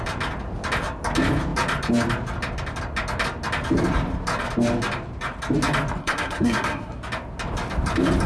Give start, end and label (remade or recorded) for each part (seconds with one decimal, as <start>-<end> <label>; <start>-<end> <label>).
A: 0.0-6.0 recorded; 6.0-7.0 remade; 7.0-8.3 recorded